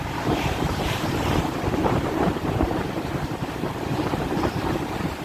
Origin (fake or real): fake